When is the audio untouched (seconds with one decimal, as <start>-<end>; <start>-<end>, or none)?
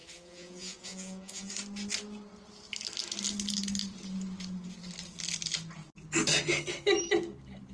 1.5-7.7